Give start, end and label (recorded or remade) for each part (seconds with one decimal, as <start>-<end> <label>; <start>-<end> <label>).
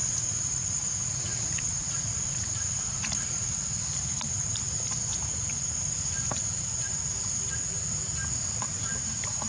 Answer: 0.0-3.5 remade; 3.5-9.5 recorded